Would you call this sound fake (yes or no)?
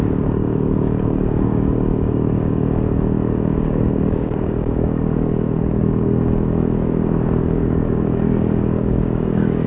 yes